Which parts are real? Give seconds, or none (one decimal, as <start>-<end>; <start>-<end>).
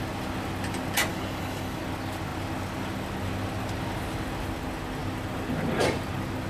0.0-1.1; 1.8-6.5